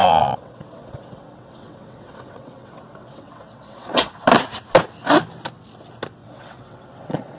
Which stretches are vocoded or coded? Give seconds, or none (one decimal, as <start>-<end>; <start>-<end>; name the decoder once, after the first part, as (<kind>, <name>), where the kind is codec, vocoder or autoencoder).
0.0-4.1 (vocoder, WaveNeXt); 6.2-7.4